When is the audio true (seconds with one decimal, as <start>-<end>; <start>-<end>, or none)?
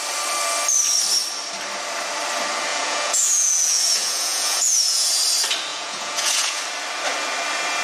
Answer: 0.0-2.7; 5.2-5.7; 6.6-7.8